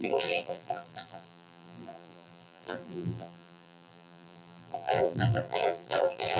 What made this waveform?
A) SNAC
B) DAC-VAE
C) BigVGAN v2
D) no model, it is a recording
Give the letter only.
C